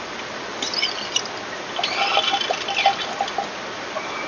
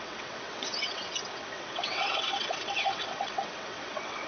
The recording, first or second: first